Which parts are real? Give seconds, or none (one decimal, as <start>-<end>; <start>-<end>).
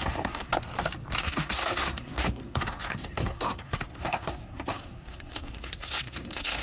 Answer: 0.5-1.2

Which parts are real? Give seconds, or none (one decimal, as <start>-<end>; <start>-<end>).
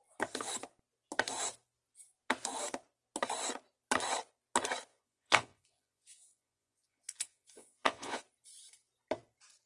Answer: 0.0-4.9; 8.2-9.7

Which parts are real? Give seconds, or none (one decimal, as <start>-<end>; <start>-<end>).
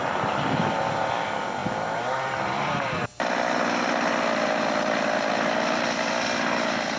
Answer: 0.0-1.6; 5.8-7.0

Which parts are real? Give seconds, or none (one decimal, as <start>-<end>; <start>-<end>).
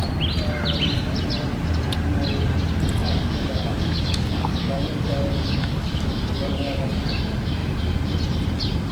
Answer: 0.0-3.0; 7.1-8.9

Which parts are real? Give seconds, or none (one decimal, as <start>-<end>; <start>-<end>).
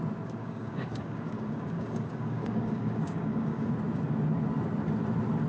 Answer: 0.0-0.4; 3.7-5.5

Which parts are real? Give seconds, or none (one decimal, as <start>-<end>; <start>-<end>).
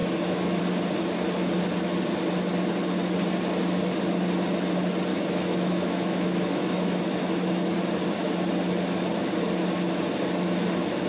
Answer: 0.6-5.1; 7.0-11.1